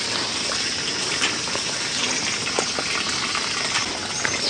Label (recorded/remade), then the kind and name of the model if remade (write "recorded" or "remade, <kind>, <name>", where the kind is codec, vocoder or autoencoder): recorded